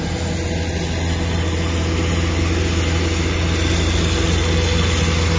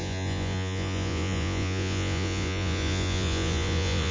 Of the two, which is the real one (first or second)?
first